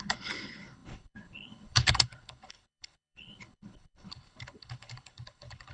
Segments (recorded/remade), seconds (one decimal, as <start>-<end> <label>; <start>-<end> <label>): 0.0-5.7 remade